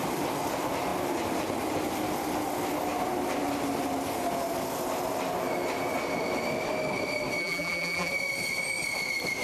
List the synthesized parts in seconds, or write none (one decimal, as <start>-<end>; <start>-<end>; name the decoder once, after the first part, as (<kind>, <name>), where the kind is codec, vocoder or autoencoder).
7.4-8.1 (vocoder, BigVGAN v2)